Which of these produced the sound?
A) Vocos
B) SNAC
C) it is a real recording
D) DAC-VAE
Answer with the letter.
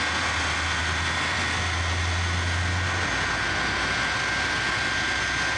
C